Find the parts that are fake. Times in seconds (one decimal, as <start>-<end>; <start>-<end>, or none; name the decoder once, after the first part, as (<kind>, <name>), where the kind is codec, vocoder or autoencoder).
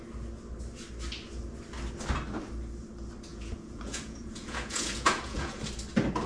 3.3-5.6 (vocoder, Vocos)